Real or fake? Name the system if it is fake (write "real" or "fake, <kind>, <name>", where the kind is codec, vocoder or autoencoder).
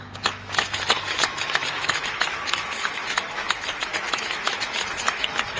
fake, autoencoder, DAC-VAE